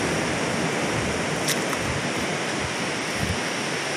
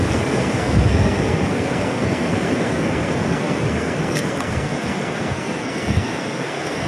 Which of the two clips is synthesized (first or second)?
second